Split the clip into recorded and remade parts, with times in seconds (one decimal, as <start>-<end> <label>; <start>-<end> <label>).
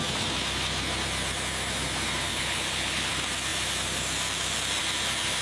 0.0-2.3 recorded; 2.3-3.1 remade; 3.1-5.4 recorded